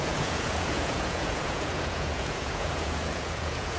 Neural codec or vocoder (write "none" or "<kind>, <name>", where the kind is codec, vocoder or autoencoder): vocoder, Vocos